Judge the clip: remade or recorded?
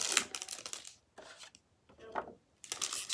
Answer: recorded